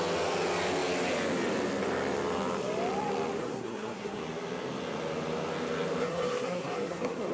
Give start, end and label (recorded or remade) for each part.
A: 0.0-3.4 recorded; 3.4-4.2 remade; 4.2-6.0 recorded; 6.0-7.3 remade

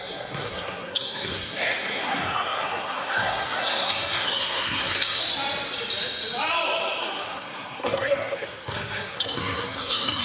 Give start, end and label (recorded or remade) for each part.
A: 0.0-5.2 remade; 5.2-7.0 recorded; 7.0-10.2 remade